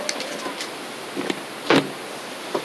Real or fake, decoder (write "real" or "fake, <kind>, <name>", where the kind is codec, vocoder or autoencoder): real